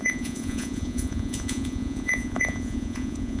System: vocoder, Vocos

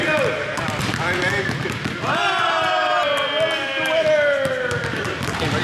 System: none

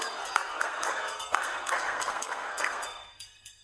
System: codec, SNAC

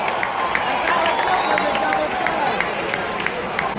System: none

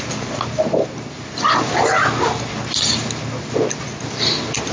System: none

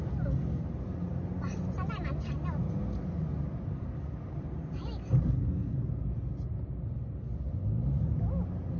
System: none